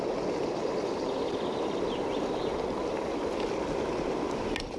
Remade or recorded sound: recorded